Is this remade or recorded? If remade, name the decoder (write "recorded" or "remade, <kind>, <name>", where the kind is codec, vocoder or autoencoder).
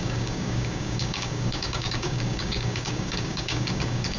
remade, codec, DAC